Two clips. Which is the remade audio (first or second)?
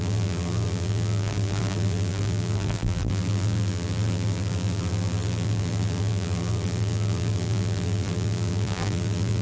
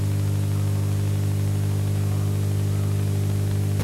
first